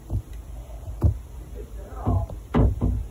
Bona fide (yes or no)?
no